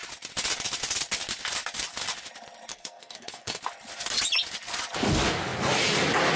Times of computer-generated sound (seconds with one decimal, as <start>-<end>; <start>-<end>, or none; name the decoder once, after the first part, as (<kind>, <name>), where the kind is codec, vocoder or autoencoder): 2.7-3.6 (codec, SNAC)